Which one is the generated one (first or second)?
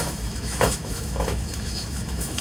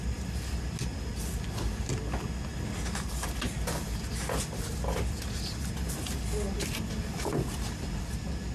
first